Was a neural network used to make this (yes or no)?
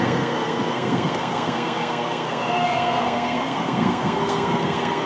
yes